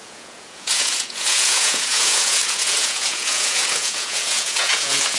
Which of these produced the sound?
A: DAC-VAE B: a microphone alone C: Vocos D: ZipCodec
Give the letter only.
C